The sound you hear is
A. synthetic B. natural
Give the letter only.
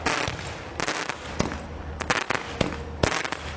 B